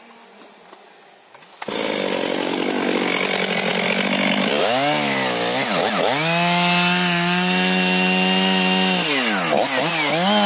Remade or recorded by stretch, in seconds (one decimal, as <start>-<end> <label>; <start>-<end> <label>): 0.0-10.5 recorded